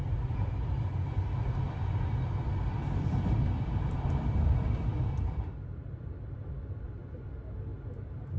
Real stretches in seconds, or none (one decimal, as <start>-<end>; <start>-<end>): 0.0-8.4